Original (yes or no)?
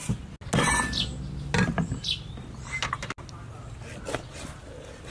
yes